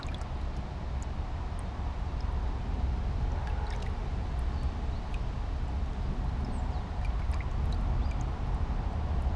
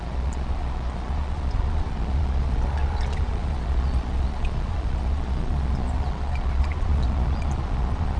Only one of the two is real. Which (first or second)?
first